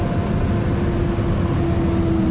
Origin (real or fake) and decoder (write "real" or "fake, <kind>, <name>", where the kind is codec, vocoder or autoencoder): real